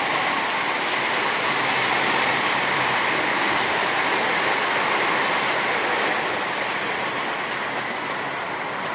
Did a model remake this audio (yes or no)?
no